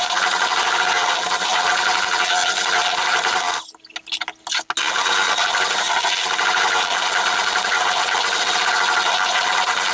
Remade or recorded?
recorded